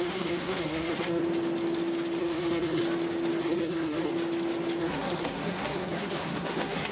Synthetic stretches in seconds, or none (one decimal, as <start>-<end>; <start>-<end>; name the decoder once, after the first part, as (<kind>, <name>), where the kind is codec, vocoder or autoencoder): 0.0-1.2 (codec, SNAC); 2.2-2.8; 3.4-4.1; 4.8-6.9